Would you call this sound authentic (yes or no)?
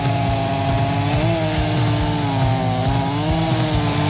yes